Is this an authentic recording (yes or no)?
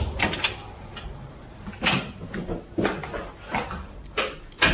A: yes